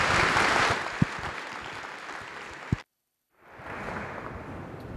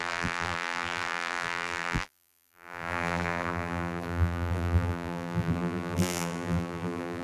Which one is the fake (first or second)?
second